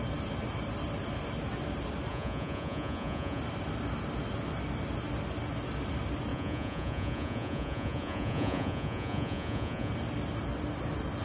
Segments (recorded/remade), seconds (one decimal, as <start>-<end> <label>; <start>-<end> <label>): 0.0-2.1 recorded; 2.1-3.4 remade; 3.4-6.3 recorded; 6.3-9.9 remade; 9.9-11.2 recorded